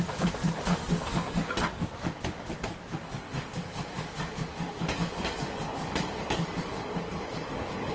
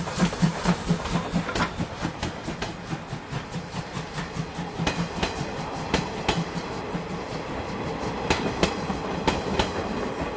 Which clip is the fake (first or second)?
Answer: first